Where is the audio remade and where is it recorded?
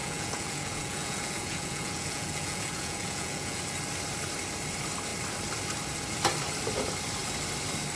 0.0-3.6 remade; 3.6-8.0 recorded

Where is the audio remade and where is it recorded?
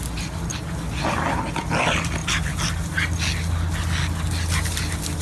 0.0-5.2 recorded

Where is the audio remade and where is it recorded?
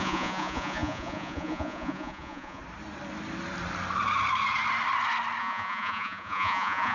0.0-2.6 remade; 2.6-5.4 recorded; 5.4-6.9 remade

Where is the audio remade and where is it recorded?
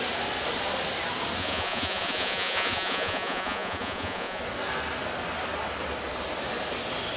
0.0-1.4 recorded; 1.4-4.4 remade; 4.4-7.2 recorded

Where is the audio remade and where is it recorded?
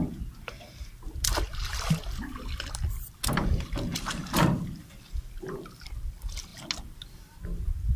0.0-8.0 recorded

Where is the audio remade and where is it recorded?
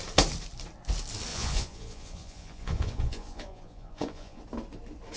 0.0-1.3 recorded; 1.3-4.4 remade; 4.4-5.2 recorded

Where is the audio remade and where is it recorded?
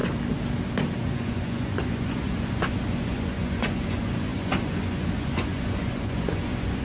0.0-1.0 recorded; 1.0-6.8 remade